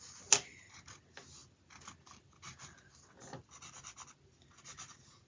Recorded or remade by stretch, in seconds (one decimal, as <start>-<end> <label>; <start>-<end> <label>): 0.0-5.3 recorded